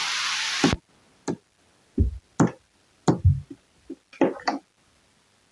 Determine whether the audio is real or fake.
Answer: real